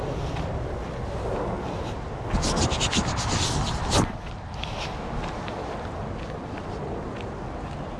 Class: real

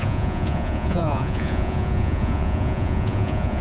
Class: fake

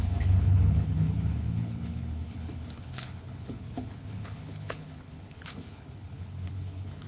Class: fake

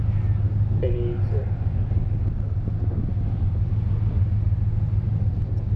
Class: real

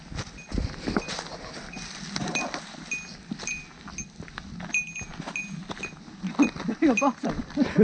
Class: real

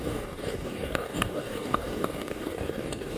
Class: fake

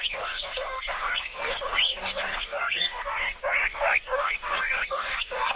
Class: fake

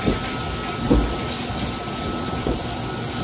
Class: real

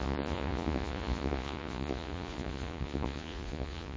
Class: fake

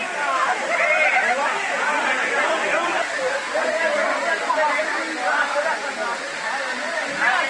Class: real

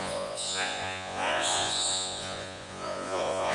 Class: fake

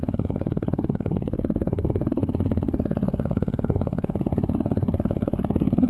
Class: fake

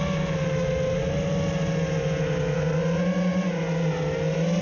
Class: real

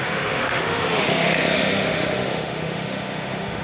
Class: fake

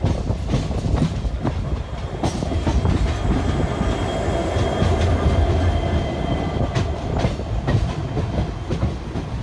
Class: real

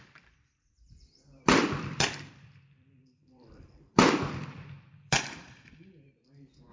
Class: fake